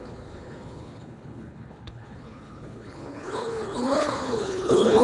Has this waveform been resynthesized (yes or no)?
yes